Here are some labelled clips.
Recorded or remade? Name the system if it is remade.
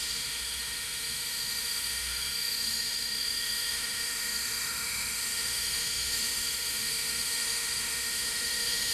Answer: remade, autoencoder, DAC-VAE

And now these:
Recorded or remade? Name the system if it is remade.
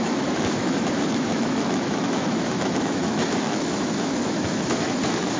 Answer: remade, autoencoder, DAC-VAE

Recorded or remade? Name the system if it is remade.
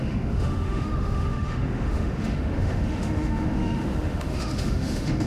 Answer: remade, autoencoder, DAC-VAE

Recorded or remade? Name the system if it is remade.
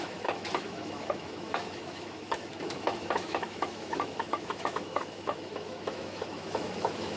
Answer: remade, autoencoder, DAC-VAE